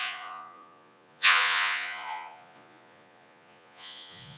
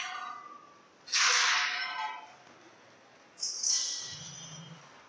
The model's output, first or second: first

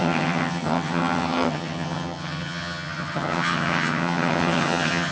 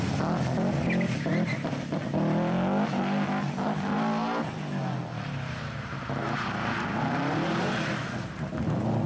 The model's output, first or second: first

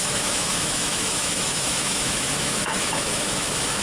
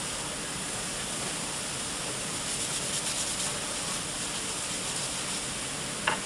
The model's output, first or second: first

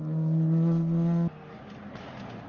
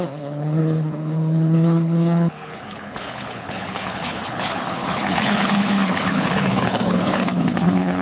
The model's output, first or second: second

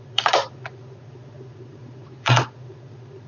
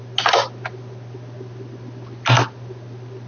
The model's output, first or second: first